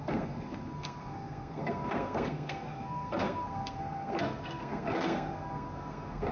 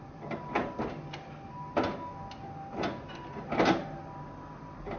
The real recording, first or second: second